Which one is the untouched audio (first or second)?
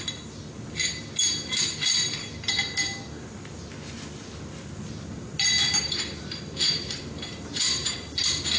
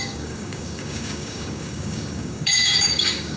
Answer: first